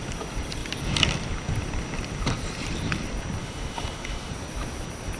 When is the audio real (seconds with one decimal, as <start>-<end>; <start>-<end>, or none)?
0.0-3.4; 4.3-5.2